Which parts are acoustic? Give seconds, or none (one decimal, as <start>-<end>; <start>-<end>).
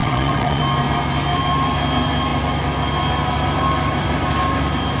0.6-5.0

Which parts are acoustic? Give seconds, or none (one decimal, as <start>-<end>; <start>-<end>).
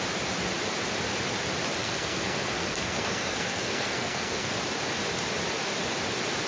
0.0-1.8; 4.5-6.5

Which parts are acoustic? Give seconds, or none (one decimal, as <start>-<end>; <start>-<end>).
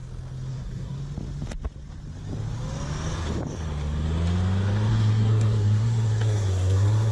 0.0-0.5; 1.0-4.9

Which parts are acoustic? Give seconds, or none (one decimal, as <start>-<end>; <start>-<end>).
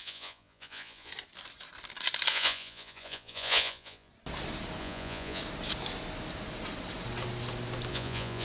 1.1-2.3; 4.1-4.8; 5.4-7.9